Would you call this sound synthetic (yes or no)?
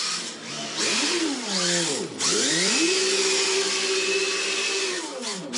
no